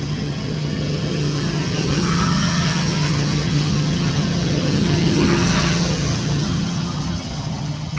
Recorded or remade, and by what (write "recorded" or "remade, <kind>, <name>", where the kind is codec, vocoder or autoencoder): remade, vocoder, HiFi-GAN